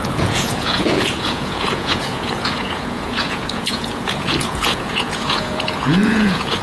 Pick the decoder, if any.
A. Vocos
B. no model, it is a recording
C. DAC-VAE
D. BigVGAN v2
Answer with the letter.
A